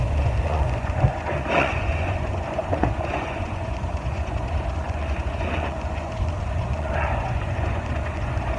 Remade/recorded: remade